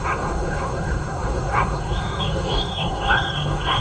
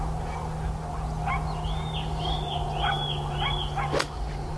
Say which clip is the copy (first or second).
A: first